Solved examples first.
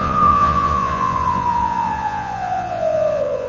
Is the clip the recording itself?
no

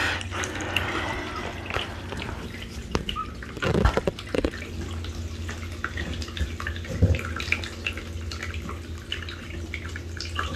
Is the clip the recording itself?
yes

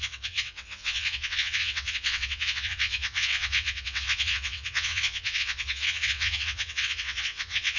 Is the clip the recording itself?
no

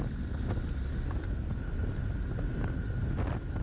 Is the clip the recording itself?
yes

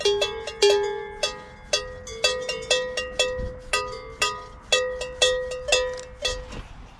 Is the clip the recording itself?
yes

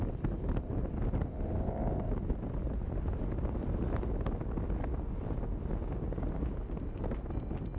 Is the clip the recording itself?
yes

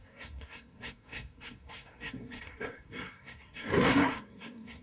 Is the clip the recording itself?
no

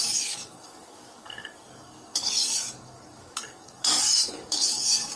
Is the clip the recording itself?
no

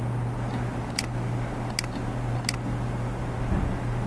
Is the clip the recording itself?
yes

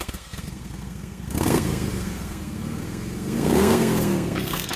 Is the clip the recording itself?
no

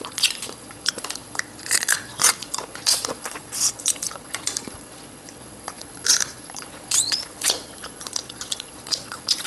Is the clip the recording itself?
no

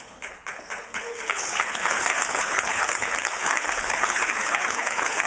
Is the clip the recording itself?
no